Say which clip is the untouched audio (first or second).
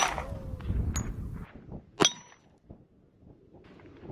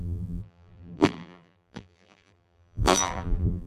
first